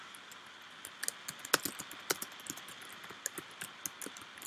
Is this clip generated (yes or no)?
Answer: no